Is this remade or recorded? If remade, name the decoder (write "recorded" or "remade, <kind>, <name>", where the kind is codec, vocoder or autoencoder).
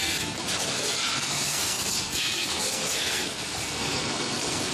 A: remade, codec, SNAC